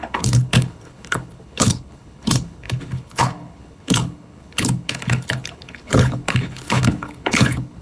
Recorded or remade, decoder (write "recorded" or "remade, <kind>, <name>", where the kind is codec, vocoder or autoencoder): remade, codec, HILCodec